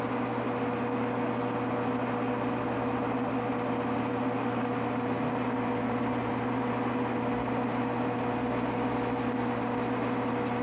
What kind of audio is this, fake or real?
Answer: real